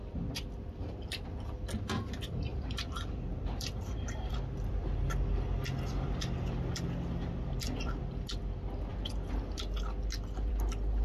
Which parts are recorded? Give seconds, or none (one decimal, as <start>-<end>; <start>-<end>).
0.0-2.5; 4.3-11.0

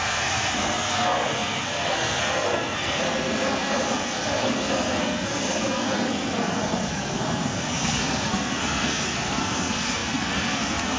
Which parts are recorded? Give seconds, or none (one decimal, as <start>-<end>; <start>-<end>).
none

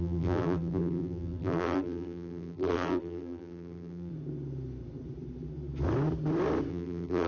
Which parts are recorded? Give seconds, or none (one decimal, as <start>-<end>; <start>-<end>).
4.1-6.7

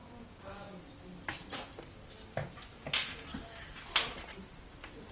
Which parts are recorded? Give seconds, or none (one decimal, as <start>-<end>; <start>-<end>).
0.8-5.1